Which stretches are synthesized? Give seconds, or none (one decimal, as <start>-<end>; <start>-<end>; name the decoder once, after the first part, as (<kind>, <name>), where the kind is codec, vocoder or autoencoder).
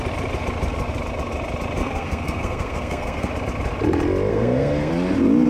1.8-3.3 (codec, SNAC); 4.3-4.9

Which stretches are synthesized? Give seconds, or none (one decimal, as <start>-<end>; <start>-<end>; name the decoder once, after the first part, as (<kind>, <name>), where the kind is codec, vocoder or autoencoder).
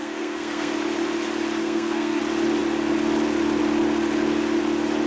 0.0-0.7 (codec, SNAC); 1.6-2.2